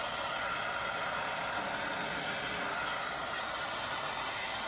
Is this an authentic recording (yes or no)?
yes